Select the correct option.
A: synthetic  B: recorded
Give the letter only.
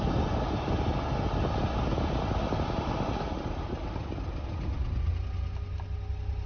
B